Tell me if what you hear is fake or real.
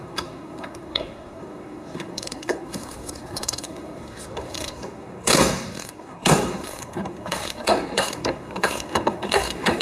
fake